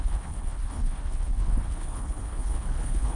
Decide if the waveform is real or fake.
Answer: fake